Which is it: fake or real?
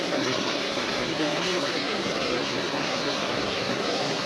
fake